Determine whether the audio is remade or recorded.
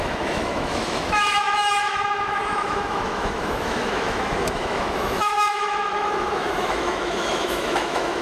remade